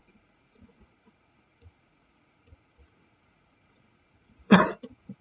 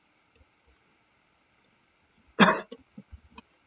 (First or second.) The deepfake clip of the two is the first